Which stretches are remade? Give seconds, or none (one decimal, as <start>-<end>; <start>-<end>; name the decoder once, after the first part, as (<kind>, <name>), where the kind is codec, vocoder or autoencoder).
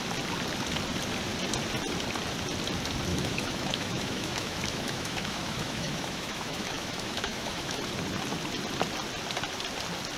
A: 3.1-7.8 (autoencoder, DAC-VAE)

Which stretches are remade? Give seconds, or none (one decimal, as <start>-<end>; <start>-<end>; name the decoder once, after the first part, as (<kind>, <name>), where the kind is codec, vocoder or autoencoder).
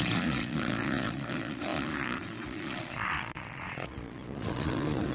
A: 0.0-5.1 (vocoder, Vocos)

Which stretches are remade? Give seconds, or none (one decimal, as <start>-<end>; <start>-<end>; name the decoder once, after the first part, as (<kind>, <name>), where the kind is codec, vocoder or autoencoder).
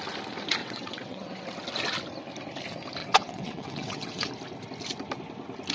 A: 0.6-1.4 (vocoder, WaveNeXt); 3.0-4.3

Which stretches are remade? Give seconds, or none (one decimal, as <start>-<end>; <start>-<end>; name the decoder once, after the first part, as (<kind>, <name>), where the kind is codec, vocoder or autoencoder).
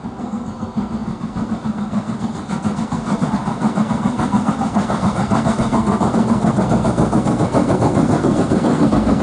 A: 0.0-9.2 (codec, SNAC)